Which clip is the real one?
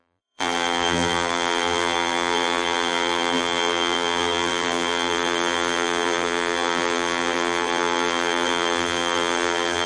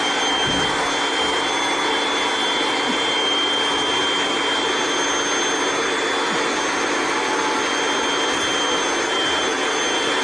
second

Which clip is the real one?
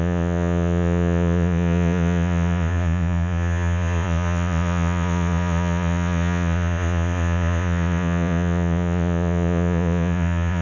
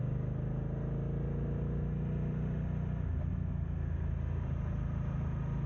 second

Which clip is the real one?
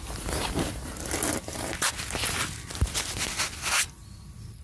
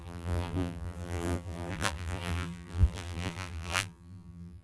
first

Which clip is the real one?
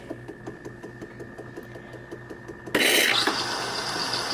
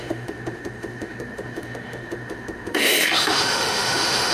first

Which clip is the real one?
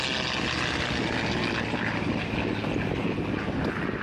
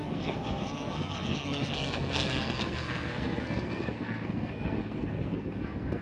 first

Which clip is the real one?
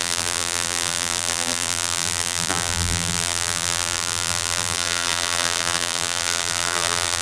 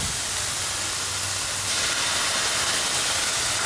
second